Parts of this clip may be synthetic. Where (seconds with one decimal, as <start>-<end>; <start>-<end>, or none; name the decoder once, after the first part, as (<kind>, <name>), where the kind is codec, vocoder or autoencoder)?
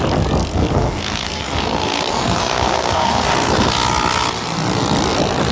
0.4-3.7 (codec, SNAC)